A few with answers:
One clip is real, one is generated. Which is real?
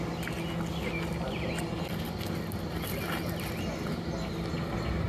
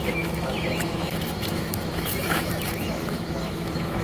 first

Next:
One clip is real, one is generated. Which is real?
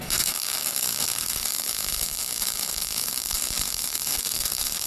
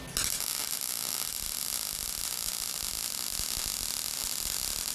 second